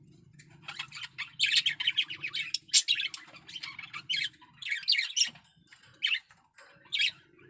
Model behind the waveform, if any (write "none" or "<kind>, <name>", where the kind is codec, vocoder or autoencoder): none